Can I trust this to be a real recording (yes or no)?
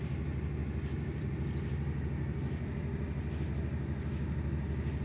yes